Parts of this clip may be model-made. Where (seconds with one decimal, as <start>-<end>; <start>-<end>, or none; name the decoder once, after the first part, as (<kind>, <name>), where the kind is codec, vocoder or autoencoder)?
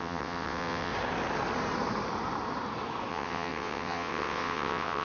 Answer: 0.0-0.9 (vocoder, WaveNeXt); 3.1-5.0